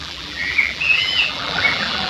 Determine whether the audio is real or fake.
fake